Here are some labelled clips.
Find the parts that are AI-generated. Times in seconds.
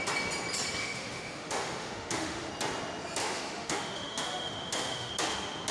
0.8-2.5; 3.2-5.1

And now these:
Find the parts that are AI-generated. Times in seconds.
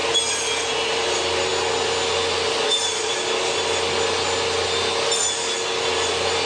none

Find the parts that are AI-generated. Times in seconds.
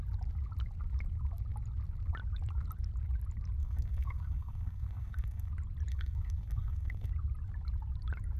3.6-5.5; 5.9-7.1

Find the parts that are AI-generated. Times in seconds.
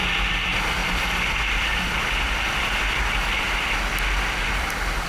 none